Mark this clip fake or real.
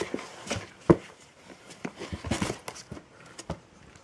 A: real